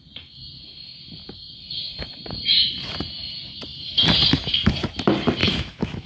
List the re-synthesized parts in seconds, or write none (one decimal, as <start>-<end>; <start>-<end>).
5.4-6.1